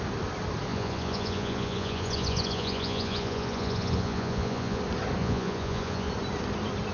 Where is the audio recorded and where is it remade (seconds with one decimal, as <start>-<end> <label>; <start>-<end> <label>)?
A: 0.0-0.7 recorded; 0.7-4.8 remade; 4.8-5.2 recorded; 5.2-6.1 remade; 6.1-6.9 recorded